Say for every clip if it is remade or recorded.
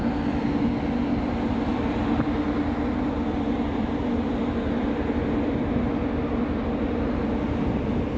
recorded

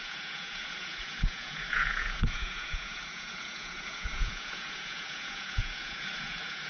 remade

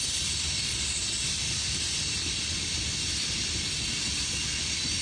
recorded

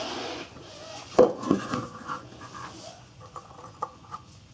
remade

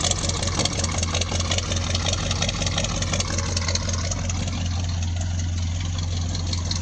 recorded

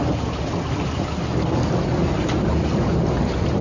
recorded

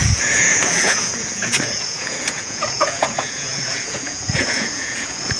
remade